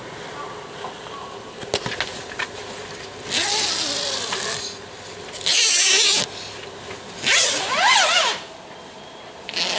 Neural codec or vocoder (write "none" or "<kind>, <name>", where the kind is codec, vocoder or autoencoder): none